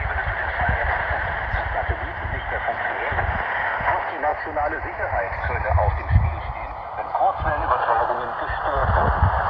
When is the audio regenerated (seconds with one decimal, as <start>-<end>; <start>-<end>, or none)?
0.8-1.6; 4.3-5.9